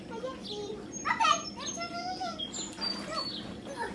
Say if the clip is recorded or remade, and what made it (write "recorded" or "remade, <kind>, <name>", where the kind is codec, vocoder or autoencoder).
recorded